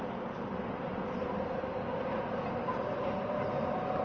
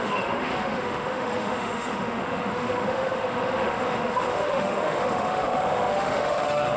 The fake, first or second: second